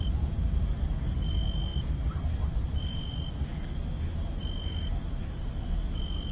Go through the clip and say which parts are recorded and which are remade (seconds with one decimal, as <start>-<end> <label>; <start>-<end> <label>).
0.0-6.3 recorded